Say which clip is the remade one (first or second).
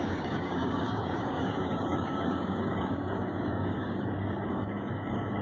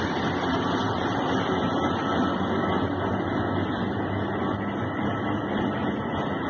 first